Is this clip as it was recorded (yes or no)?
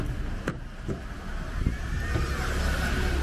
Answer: yes